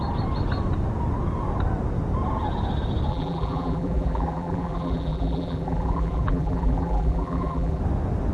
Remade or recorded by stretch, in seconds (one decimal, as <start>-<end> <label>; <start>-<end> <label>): 0.0-3.1 recorded; 3.1-7.8 remade; 7.8-8.3 recorded